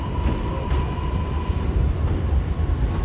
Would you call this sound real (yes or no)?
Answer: no